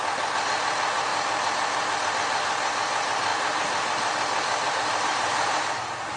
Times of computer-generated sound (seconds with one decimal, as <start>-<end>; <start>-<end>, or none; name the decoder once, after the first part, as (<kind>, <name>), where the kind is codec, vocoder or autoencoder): 0.5-6.2 (vocoder, BigVGAN v2)